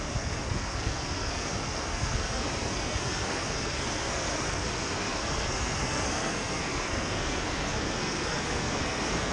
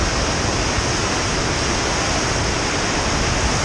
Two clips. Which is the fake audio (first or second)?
first